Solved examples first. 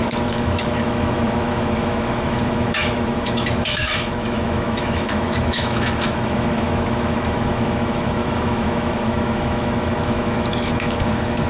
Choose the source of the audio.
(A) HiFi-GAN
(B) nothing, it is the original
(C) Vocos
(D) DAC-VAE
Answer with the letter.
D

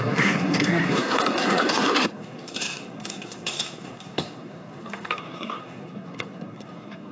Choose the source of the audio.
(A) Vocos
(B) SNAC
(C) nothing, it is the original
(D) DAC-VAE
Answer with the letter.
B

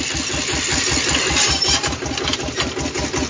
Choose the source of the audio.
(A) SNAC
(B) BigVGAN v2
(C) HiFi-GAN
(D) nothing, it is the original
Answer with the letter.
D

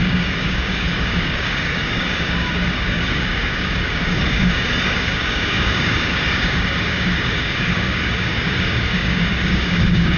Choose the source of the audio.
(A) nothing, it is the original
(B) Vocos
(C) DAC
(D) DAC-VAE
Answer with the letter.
C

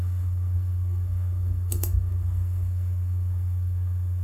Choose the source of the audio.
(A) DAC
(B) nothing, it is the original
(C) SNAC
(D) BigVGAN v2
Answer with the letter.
C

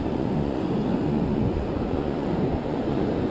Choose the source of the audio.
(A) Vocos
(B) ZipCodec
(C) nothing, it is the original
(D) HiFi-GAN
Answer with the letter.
A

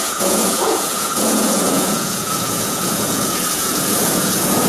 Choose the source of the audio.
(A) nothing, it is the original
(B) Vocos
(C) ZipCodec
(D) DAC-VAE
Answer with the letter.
B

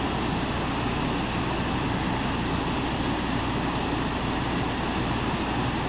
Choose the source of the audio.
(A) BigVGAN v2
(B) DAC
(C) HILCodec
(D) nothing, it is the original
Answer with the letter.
D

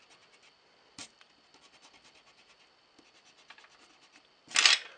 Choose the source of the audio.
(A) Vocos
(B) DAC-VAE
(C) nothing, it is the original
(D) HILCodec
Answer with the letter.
C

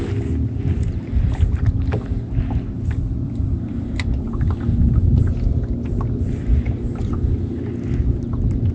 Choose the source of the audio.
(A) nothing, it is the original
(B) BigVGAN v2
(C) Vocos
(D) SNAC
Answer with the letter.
A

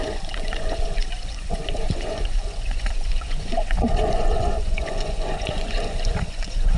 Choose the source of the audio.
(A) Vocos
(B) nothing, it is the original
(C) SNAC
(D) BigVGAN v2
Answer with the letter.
A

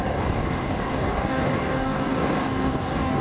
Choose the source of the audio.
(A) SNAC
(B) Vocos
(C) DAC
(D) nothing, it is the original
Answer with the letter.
C